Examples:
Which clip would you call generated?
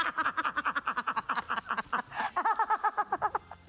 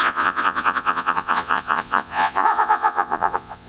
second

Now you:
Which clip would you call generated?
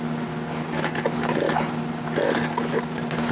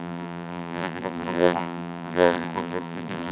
second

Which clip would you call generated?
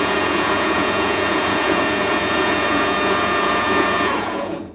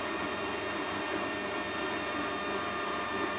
first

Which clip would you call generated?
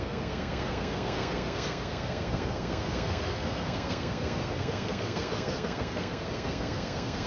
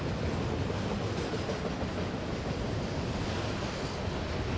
first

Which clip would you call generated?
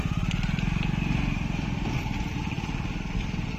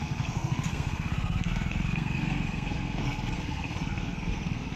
second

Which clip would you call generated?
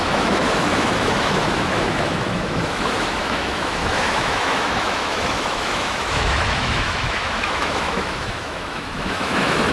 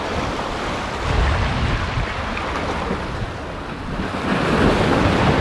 first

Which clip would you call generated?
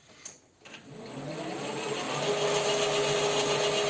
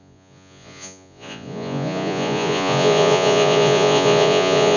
second